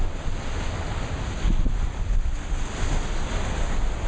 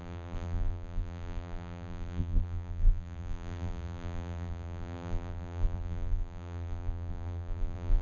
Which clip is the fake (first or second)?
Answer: second